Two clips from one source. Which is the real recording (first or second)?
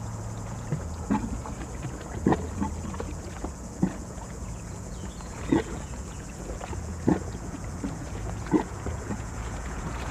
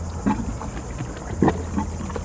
second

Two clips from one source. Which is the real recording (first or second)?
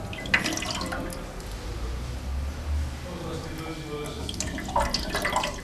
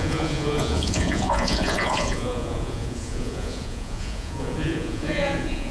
first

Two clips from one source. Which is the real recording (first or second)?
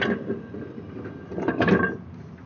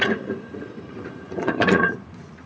first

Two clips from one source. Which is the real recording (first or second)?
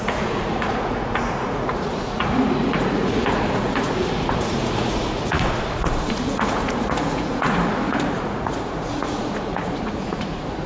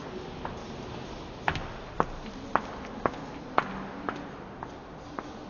second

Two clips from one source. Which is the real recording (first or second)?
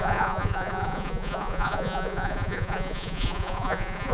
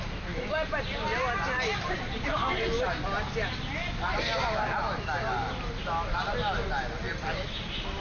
second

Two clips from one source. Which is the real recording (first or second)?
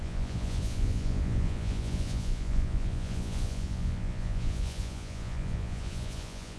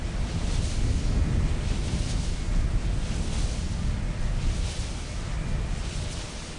second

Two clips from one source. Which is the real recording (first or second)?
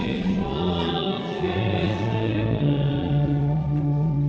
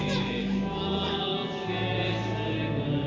second